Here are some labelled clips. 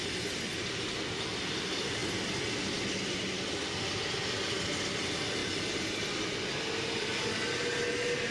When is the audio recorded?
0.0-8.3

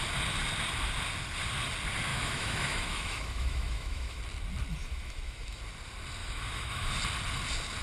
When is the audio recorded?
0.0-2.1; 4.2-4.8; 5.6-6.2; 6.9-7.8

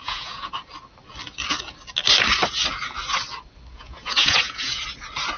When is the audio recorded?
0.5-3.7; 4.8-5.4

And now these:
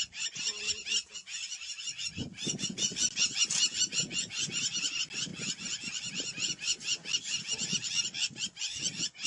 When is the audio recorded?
0.0-9.3